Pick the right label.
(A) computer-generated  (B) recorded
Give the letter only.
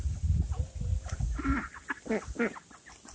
B